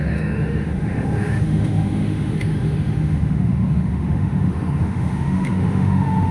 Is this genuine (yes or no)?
no